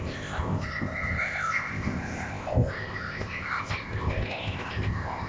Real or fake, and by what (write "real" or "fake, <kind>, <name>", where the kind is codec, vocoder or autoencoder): fake, codec, ZipCodec